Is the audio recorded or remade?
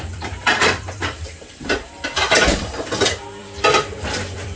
remade